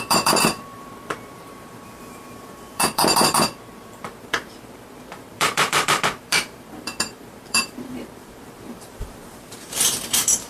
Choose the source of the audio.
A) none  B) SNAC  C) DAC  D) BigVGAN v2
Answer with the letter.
D